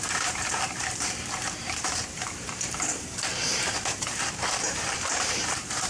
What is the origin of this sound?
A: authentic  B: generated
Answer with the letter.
B